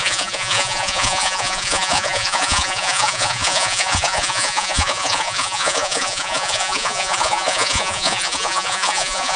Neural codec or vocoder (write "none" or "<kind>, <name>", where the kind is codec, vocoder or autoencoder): vocoder, Vocos